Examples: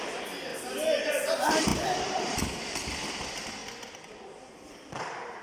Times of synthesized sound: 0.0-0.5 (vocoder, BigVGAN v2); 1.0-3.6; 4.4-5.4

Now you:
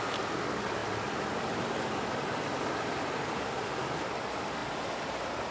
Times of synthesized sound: 4.6-5.1 (vocoder, BigVGAN v2)

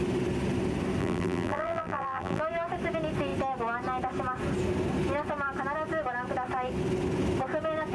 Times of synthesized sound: 1.0-2.4 (vocoder, BigVGAN v2)

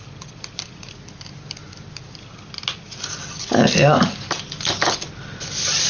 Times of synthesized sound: 0.0-1.6 (vocoder, BigVGAN v2); 5.1-5.9

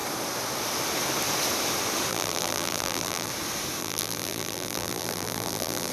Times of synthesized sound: 2.1-3.3 (vocoder, BigVGAN v2); 3.8-5.9

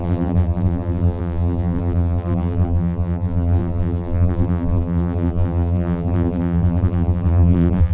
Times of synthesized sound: 0.0-7.9 (vocoder, BigVGAN v2)